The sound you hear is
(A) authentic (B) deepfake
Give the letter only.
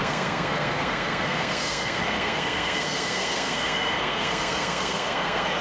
B